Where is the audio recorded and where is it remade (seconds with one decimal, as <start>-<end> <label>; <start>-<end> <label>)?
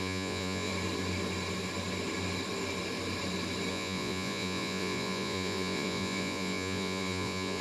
0.0-0.7 remade; 0.7-3.7 recorded; 3.7-7.6 remade